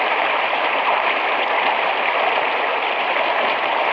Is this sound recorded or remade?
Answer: recorded